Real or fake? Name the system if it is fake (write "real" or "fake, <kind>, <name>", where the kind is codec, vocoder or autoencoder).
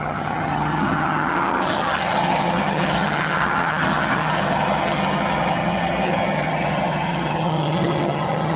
fake, vocoder, HiFi-GAN